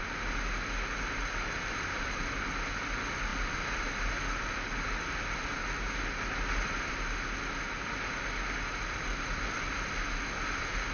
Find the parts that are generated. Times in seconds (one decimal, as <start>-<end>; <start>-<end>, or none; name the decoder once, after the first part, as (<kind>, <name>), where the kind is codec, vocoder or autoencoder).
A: none